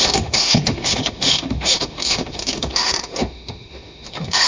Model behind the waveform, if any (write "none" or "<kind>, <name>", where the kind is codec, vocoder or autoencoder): autoencoder, DAC-VAE